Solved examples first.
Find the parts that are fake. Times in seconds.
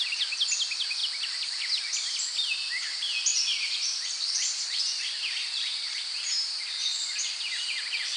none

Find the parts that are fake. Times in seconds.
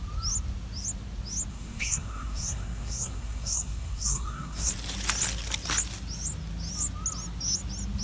1.5-4.7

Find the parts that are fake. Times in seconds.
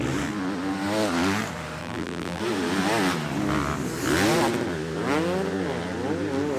1.8-2.4